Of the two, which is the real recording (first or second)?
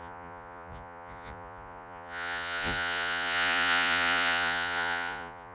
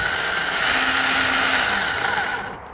second